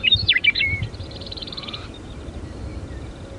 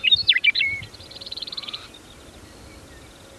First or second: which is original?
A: second